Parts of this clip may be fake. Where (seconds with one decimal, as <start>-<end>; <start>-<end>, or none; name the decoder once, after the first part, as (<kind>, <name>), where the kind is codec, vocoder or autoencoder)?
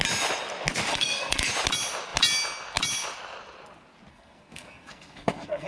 0.9-1.5 (codec, SNAC); 4.1-5.7